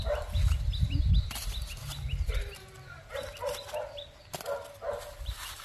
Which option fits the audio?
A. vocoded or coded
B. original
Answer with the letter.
B